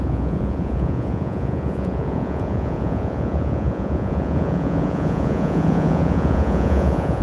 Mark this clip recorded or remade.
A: remade